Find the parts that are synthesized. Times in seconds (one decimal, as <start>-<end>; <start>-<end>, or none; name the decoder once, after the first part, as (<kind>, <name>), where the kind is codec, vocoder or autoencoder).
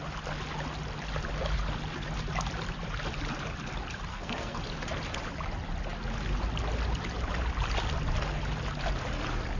4.1-4.6 (codec, SNAC)